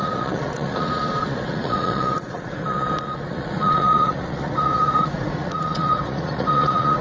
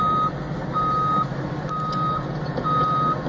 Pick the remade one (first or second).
first